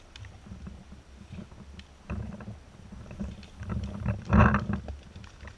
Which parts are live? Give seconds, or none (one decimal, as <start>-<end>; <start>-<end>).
0.0-5.6